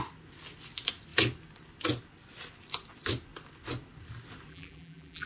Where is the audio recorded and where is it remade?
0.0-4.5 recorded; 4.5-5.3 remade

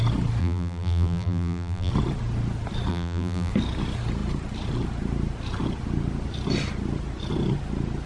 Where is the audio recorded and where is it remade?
0.0-0.4 recorded; 0.4-1.9 remade; 1.9-2.9 recorded; 2.9-3.5 remade; 3.5-8.1 recorded

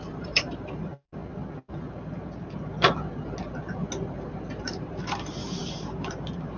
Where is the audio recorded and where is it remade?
0.0-1.2 remade; 1.2-4.5 recorded; 4.5-6.6 remade

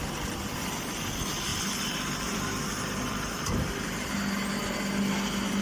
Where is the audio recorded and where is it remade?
0.0-1.5 recorded; 1.5-3.5 remade; 3.5-5.6 recorded